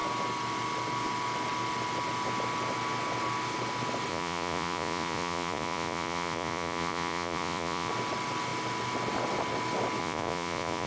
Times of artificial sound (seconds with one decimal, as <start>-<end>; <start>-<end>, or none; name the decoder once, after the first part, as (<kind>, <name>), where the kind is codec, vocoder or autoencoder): 4.1-7.9 (vocoder, Vocos); 10.0-10.9